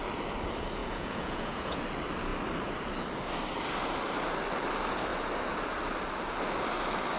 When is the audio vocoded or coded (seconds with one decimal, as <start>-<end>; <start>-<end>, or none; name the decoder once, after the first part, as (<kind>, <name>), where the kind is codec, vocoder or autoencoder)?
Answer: 0.8-1.8 (vocoder, Vocos)